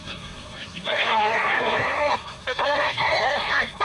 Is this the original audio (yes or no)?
no